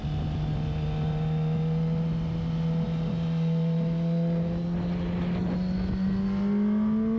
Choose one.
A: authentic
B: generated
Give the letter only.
A